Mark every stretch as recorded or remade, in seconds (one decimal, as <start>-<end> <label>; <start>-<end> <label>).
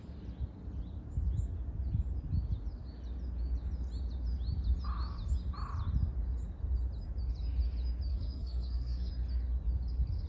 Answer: 0.0-8.1 recorded; 8.1-9.1 remade; 9.1-10.3 recorded